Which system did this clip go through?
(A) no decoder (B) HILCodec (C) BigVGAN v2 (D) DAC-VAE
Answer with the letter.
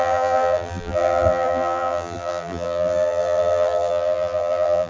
C